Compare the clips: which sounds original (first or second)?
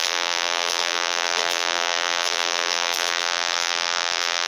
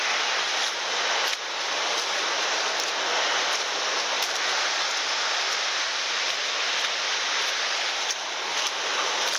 second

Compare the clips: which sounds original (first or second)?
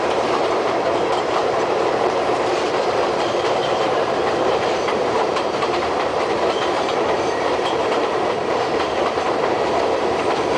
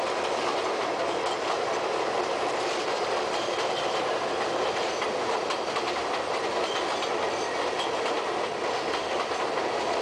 second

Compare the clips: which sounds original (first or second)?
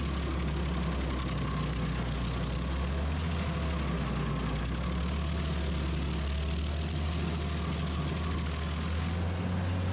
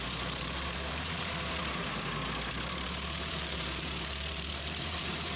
first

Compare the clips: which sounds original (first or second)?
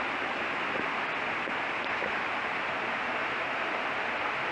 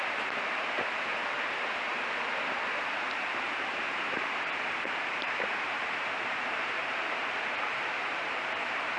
first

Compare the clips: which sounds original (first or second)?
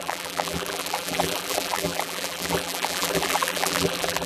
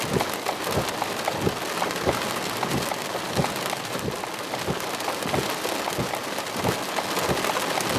second